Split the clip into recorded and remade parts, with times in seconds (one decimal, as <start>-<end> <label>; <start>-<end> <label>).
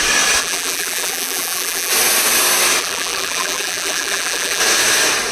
0.0-0.4 recorded; 0.4-1.9 remade; 1.9-2.8 recorded; 2.8-4.6 remade; 4.6-5.3 recorded